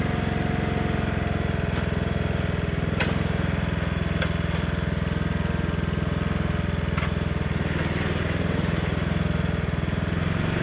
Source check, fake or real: real